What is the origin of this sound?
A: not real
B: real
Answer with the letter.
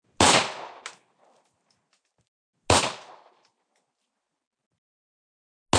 B